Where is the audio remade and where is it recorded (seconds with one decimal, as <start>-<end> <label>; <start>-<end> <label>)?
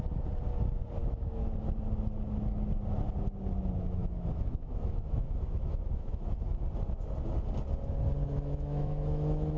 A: 0.0-1.0 recorded; 1.0-1.5 remade; 1.5-4.0 recorded; 4.0-6.6 remade; 6.6-8.2 recorded; 8.2-9.6 remade